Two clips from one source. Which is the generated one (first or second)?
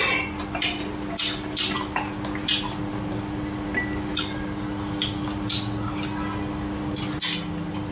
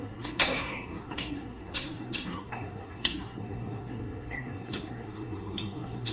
second